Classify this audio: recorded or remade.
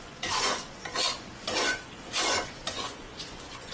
remade